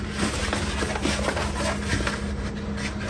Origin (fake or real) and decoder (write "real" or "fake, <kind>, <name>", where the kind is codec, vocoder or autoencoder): real